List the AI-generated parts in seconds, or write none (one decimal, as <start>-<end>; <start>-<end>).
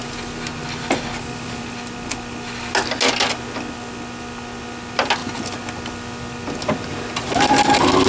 none